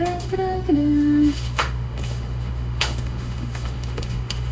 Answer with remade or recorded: remade